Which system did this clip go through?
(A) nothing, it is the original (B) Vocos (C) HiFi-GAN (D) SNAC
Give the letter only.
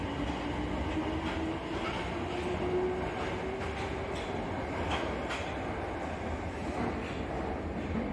A